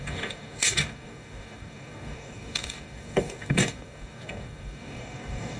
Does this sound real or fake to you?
fake